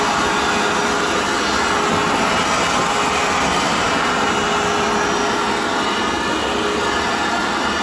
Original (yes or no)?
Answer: yes